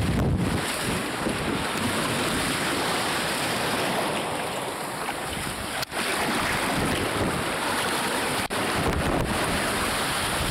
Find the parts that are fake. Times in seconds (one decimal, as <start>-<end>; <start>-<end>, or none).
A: none